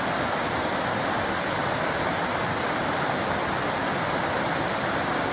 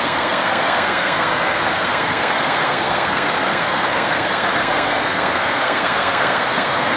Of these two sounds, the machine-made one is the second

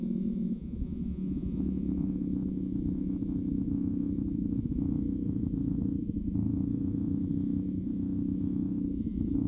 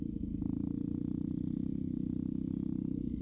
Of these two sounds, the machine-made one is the first